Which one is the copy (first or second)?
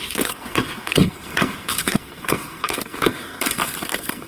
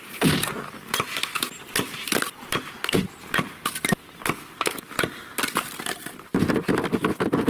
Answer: first